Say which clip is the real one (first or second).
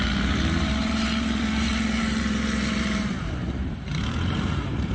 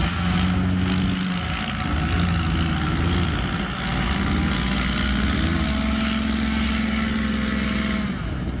second